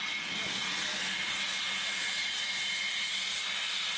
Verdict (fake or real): real